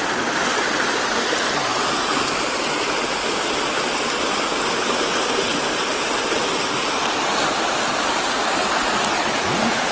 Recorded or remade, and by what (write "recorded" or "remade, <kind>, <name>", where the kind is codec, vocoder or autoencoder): recorded